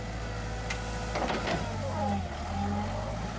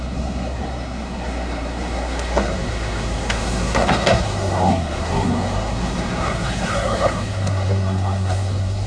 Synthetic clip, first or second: second